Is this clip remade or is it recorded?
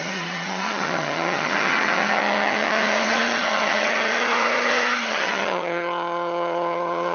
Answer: remade